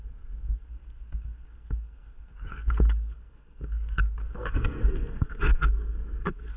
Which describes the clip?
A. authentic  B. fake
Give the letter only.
B